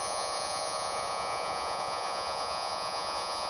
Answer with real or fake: fake